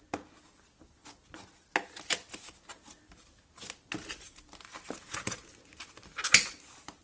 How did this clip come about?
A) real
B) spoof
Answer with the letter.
A